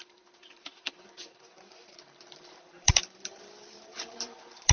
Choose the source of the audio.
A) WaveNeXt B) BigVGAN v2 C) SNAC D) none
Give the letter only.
B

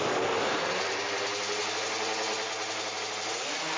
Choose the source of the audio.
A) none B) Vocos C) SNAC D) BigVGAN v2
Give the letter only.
A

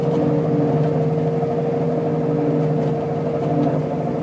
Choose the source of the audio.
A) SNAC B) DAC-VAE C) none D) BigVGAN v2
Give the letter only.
C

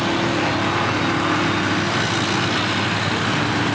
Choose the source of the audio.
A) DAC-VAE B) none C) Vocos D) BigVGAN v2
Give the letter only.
B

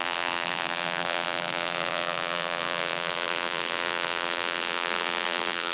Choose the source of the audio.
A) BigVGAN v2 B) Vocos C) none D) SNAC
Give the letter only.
A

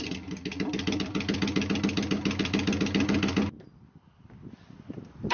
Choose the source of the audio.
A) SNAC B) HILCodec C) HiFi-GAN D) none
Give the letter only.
D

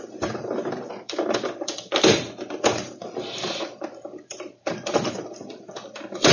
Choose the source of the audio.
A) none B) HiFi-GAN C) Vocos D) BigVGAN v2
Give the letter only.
D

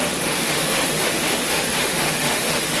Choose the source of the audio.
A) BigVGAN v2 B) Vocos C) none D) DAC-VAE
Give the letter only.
D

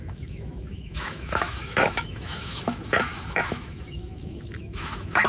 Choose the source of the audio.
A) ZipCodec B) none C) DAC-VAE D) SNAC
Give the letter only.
C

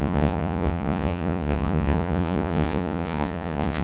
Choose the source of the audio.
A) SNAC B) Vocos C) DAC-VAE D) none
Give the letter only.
B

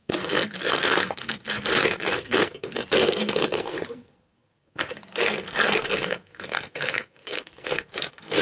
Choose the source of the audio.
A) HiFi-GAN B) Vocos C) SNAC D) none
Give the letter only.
C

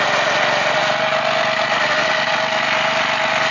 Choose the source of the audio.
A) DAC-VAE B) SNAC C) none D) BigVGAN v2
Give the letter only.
C